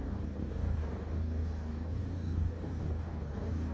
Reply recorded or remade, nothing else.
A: remade